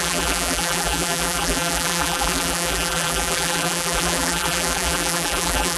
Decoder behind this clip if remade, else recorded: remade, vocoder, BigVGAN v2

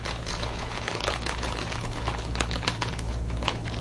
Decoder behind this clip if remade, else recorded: remade, codec, HILCodec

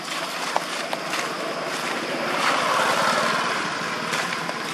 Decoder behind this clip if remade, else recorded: remade, vocoder, BigVGAN v2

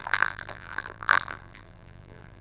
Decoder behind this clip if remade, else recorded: remade, vocoder, BigVGAN v2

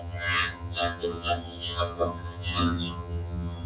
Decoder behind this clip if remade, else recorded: remade, vocoder, HiFi-GAN